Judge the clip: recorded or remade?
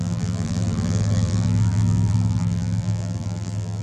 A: remade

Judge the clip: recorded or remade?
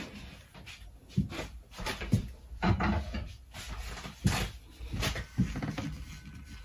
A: recorded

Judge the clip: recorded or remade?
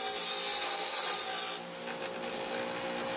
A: recorded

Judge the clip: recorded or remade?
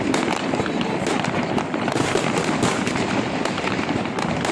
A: remade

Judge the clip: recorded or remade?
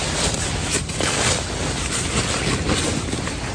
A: recorded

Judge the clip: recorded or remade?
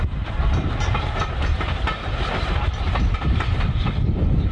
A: remade